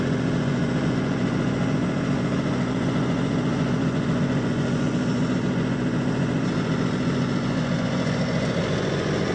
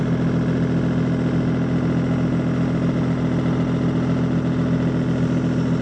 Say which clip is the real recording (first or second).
second